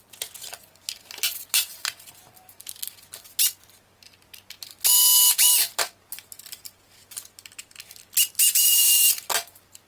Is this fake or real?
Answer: real